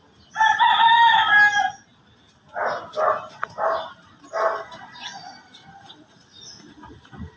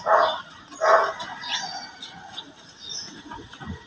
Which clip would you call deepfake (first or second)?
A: second